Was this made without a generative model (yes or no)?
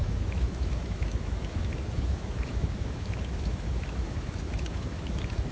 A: no